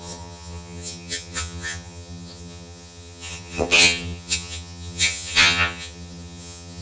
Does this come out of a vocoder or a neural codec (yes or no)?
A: yes